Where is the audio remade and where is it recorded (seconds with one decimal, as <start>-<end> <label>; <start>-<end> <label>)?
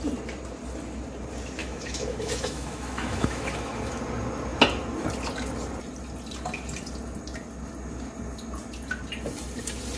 0.0-1.6 recorded; 1.6-4.0 remade; 4.0-10.0 recorded